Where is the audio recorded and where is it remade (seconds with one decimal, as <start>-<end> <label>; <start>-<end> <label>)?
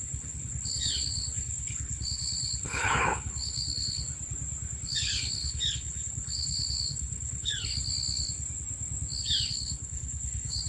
0.0-4.1 remade; 4.1-4.9 recorded; 4.9-7.7 remade; 7.7-9.2 recorded; 9.2-10.7 remade